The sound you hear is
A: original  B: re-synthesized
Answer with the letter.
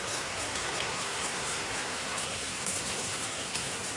B